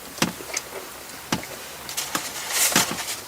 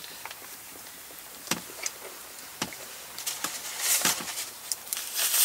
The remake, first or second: second